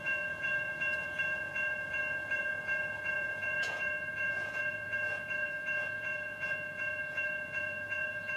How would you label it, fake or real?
fake